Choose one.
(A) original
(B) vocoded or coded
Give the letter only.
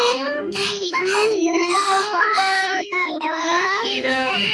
B